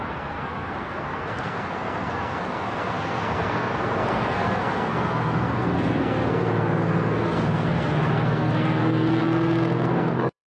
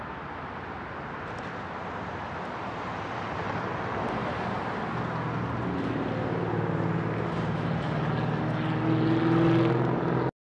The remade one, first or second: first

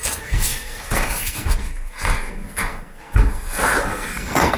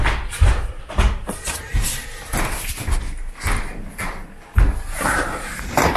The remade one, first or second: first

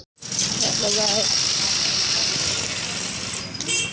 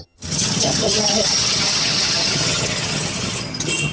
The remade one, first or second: second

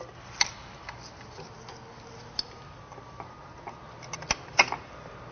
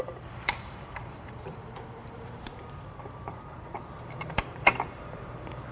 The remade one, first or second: second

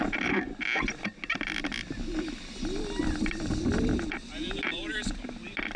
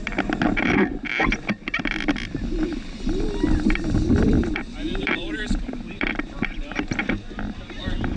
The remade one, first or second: second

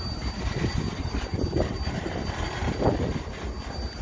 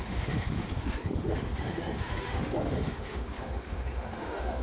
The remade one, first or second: second